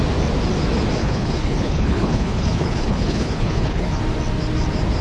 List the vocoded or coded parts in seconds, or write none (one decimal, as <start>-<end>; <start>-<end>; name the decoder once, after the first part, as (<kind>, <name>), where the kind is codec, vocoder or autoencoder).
1.0-4.0 (codec, HILCodec)